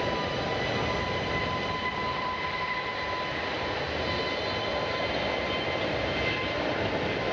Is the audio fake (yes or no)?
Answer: no